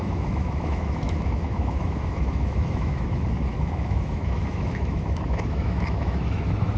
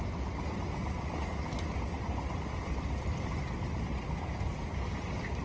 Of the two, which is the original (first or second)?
second